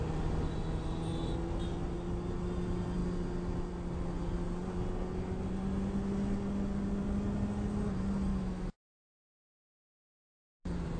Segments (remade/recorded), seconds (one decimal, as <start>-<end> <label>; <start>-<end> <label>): 0.0-8.3 recorded; 8.3-9.4 remade; 9.4-11.0 recorded